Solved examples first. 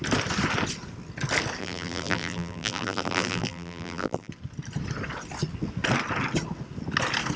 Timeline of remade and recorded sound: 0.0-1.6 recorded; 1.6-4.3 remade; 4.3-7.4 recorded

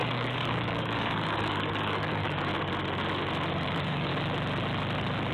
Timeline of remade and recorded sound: 0.0-2.5 remade; 2.5-3.5 recorded; 3.5-4.1 remade; 4.1-5.3 recorded

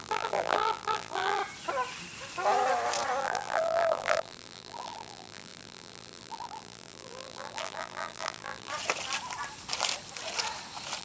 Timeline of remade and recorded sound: 0.0-1.4 remade; 1.4-3.2 recorded; 3.2-8.7 remade; 8.7-11.0 recorded

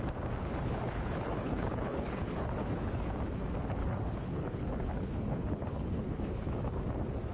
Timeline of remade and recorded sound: 0.0-0.4 recorded; 0.4-3.1 remade; 3.1-3.8 recorded; 3.8-6.8 remade; 6.8-7.3 recorded

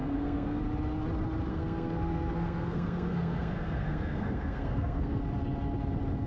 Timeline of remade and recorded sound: 0.0-0.6 remade; 0.6-1.5 recorded; 1.5-5.2 remade; 5.2-6.3 recorded

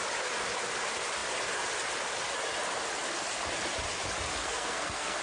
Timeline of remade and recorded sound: 0.0-4.4 recorded; 4.4-5.2 remade

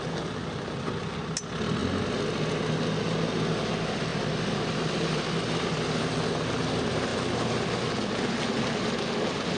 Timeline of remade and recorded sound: 0.0-9.6 recorded

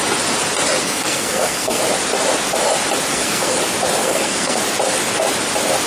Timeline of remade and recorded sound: 0.0-0.8 recorded; 0.8-1.8 remade; 1.8-3.1 recorded; 3.1-3.6 remade; 3.6-4.0 recorded; 4.0-4.6 remade; 4.6-5.9 recorded